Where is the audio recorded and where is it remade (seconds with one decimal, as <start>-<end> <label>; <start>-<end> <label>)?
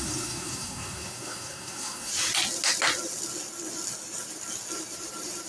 0.0-2.1 remade; 2.1-5.5 recorded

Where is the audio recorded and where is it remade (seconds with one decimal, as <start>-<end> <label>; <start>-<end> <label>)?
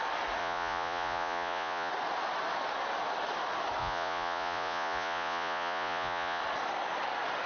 0.0-0.4 recorded; 0.4-1.9 remade; 1.9-3.8 recorded; 3.8-6.4 remade; 6.4-7.5 recorded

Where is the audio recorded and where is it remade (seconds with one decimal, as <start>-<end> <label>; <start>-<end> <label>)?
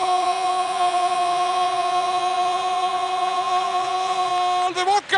0.0-4.3 remade; 4.3-5.2 recorded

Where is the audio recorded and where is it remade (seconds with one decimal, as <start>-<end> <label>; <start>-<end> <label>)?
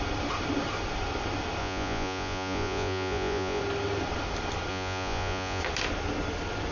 0.0-1.6 recorded; 1.6-3.6 remade; 3.6-4.7 recorded; 4.7-5.6 remade; 5.6-6.7 recorded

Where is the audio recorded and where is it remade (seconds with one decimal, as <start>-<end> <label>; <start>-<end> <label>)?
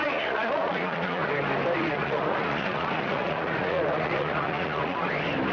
0.0-1.3 remade; 1.3-1.8 recorded; 1.8-5.1 remade; 5.1-5.5 recorded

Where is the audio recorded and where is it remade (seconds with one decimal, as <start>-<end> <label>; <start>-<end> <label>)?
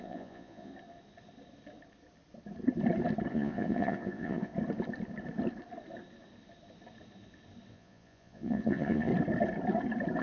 0.0-0.7 remade; 0.7-3.3 recorded; 3.3-4.5 remade; 4.5-7.7 recorded; 7.7-9.1 remade; 9.1-10.2 recorded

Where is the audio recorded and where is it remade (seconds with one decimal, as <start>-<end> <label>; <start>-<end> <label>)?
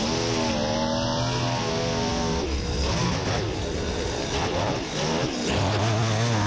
0.0-6.5 recorded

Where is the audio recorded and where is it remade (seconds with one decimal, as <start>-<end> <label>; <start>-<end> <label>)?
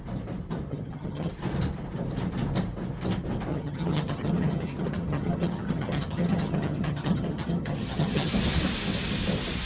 0.0-0.7 recorded; 0.7-1.3 remade; 1.3-3.5 recorded; 3.5-8.3 remade; 8.3-9.7 recorded